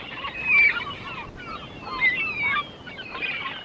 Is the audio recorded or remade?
recorded